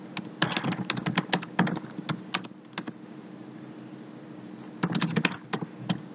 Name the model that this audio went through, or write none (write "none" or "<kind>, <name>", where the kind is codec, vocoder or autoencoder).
none